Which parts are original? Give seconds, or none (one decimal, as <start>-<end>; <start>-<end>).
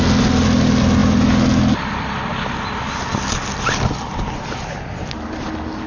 0.0-5.9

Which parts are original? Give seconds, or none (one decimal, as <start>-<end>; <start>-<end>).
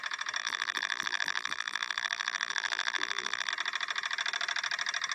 0.0-0.4; 3.5-5.1